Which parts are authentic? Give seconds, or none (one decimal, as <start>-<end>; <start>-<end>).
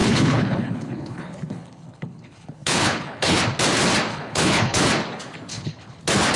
3.4-4.1; 4.8-5.5; 6.0-6.4